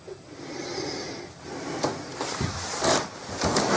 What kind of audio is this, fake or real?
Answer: real